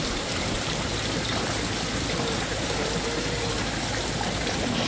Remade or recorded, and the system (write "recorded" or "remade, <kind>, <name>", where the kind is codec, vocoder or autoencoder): recorded